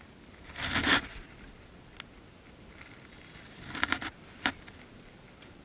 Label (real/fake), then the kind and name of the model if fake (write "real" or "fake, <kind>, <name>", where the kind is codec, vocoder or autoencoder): real